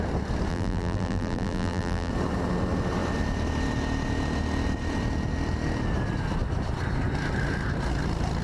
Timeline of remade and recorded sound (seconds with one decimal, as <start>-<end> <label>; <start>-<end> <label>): 0.0-0.5 recorded; 0.5-2.1 remade; 2.1-8.4 recorded

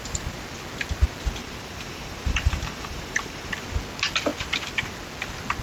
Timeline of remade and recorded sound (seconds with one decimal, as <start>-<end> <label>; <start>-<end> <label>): 0.0-1.4 recorded; 1.4-3.5 remade; 3.5-5.6 recorded